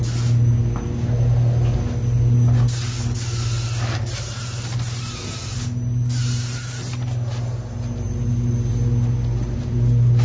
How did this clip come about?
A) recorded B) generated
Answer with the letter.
A